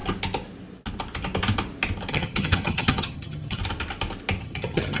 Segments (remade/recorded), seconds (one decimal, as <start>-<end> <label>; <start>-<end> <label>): 0.0-2.1 recorded; 2.1-3.6 remade; 3.6-4.4 recorded; 4.4-5.0 remade